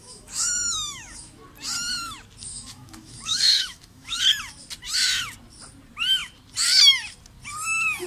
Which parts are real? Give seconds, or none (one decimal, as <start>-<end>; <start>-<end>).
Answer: 1.4-2.5; 4.2-8.1